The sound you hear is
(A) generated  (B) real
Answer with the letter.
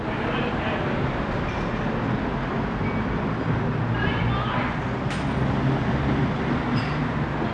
B